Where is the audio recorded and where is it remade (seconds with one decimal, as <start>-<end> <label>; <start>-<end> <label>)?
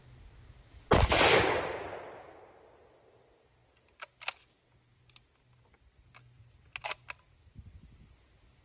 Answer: 0.0-8.6 recorded